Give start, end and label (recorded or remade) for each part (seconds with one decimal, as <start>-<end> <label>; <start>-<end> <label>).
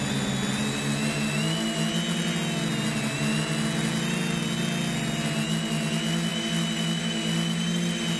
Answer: 0.0-8.2 recorded